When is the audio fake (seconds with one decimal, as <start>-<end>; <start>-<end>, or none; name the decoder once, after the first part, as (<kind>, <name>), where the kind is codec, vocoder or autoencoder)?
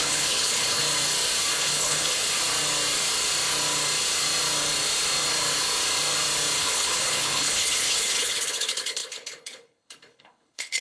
0.0-0.8 (codec, HILCodec); 1.5-2.2; 6.6-10.8